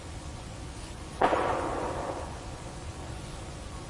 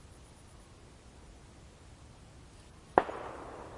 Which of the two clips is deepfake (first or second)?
first